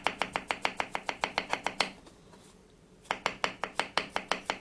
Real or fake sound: real